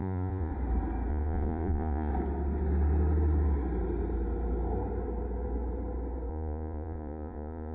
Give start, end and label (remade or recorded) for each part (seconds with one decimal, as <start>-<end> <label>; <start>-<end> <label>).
0.0-0.5 remade; 0.5-1.1 recorded; 1.1-2.1 remade; 2.1-6.3 recorded; 6.3-7.7 remade